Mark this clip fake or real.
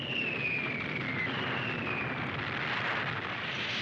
real